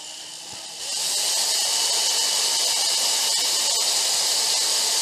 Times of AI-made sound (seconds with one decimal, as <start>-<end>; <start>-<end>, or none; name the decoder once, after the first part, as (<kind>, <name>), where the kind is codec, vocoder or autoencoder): none